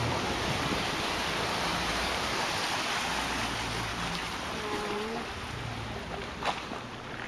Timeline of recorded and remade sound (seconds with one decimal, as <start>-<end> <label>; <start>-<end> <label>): 0.0-0.9 remade; 0.9-1.7 recorded; 1.7-2.8 remade; 2.8-3.9 recorded; 3.9-5.6 remade; 5.6-7.3 recorded